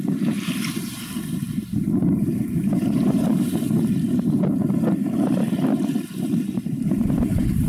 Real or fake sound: fake